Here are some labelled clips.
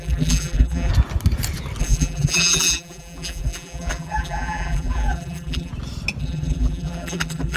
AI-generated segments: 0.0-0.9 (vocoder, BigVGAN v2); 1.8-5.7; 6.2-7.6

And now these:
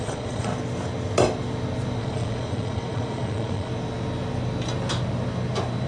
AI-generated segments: 0.0-0.5 (vocoder, Vocos); 2.0-3.7